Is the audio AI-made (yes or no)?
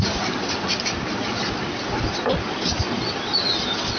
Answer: no